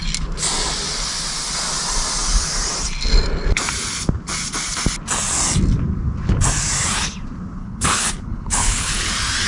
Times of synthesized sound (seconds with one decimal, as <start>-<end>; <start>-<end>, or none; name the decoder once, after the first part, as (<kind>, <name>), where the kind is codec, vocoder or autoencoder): 7.6-9.1 (codec, HILCodec)